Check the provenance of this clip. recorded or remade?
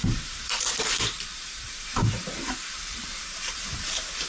remade